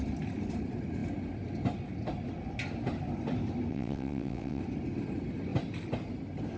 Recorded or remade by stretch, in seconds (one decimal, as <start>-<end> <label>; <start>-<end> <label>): 0.0-3.7 recorded; 3.7-4.6 remade; 4.6-6.6 recorded